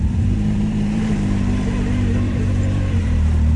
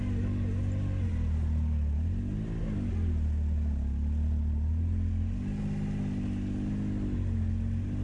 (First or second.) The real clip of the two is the second